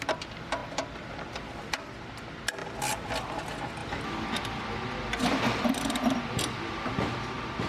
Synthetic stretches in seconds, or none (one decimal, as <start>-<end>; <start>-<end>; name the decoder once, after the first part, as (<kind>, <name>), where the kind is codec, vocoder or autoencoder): none